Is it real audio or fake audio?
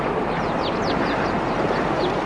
fake